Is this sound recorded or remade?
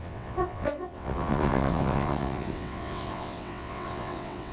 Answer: remade